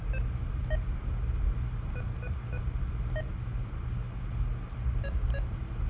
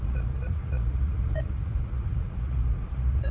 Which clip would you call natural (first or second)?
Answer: first